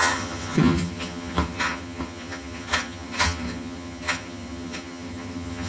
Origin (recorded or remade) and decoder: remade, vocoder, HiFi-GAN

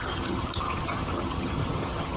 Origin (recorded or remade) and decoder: remade, vocoder, HiFi-GAN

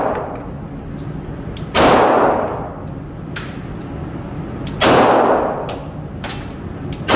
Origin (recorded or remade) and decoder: recorded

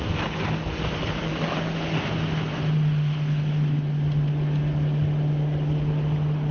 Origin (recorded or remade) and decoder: recorded